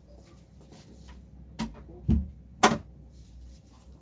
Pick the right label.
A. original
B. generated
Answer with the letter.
A